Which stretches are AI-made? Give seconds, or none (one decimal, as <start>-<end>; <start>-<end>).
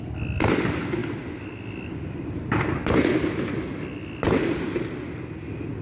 none